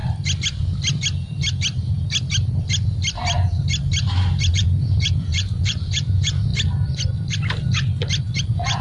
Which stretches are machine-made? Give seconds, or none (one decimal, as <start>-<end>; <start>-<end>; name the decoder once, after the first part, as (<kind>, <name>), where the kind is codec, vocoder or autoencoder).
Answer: 4.5-6.5 (vocoder, Vocos); 8.4-8.8